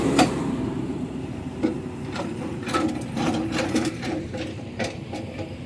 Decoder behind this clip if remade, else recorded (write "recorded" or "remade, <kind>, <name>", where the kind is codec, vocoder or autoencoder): remade, vocoder, BigVGAN v2